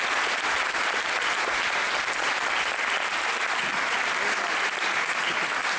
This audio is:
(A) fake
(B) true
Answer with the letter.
B